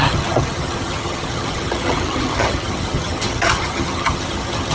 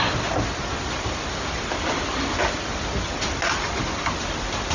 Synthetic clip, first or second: first